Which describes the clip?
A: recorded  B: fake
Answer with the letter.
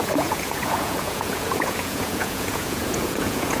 B